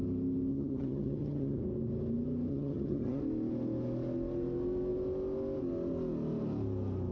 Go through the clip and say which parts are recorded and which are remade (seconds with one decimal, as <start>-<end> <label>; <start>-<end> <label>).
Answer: 0.0-0.5 recorded; 0.5-1.6 remade; 1.6-2.5 recorded; 2.5-3.2 remade; 3.2-7.1 recorded